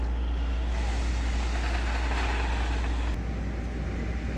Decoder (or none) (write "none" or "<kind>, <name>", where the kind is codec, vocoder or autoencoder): none